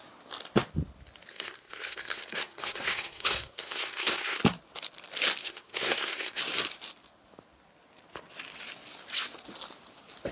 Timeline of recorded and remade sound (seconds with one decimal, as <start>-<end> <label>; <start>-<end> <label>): 0.0-1.3 recorded; 1.3-4.4 remade; 4.4-5.4 recorded; 5.4-6.4 remade; 6.4-10.3 recorded